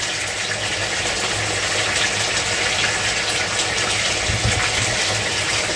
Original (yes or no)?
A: yes